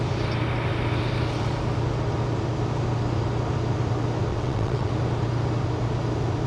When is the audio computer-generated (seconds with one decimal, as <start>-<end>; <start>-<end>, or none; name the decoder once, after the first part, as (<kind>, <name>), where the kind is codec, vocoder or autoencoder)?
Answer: 4.3-4.9 (vocoder, WaveNeXt)